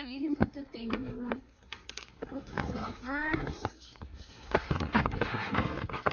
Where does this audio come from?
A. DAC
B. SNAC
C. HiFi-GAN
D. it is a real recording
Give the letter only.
B